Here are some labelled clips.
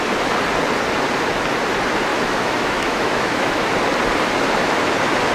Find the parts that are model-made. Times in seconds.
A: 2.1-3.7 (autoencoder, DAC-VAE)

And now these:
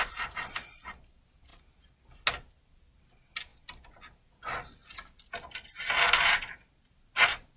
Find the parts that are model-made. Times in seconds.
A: none

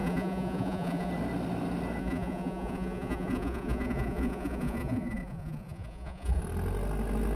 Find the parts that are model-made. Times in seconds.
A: 0.0-1.1 (vocoder, Vocos); 2.0-6.4

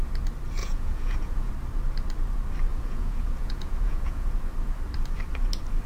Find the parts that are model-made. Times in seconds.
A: 0.6-1.5 (vocoder, Vocos); 2.7-4.3

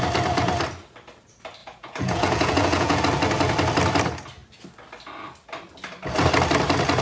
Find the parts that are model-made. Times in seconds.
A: 1.6-3.0 (vocoder, Vocos)

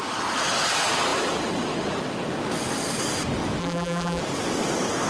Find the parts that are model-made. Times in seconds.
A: 3.6-4.2 (vocoder, BigVGAN v2)

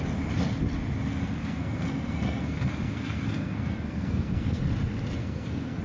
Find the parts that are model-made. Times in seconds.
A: 1.1-4.6 (codec, SNAC); 5.2-5.8